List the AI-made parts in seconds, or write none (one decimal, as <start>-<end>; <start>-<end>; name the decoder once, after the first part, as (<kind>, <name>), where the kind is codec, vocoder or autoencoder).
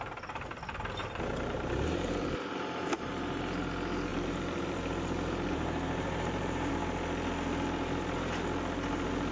1.0-3.1 (vocoder, BigVGAN v2); 4.1-6.7